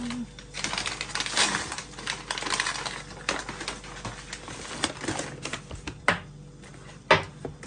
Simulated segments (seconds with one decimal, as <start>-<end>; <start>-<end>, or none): none